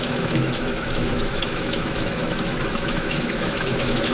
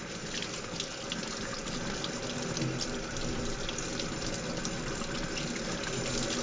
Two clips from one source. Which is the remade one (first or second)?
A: first